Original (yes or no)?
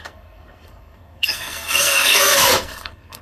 no